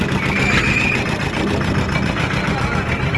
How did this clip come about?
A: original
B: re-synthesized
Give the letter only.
A